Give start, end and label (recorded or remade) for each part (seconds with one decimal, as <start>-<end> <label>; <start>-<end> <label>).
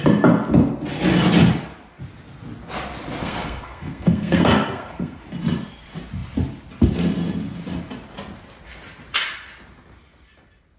0.0-3.2 recorded; 3.2-5.2 remade; 5.2-10.8 recorded